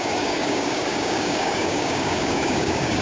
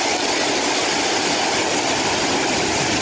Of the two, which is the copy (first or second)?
first